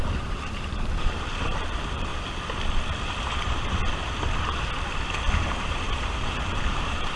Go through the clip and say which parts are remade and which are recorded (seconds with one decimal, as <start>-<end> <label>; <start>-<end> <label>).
0.0-2.1 remade; 2.1-5.2 recorded; 5.2-7.2 remade